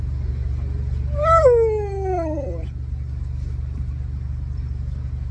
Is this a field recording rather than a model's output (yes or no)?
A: yes